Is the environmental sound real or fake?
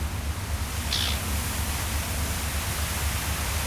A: real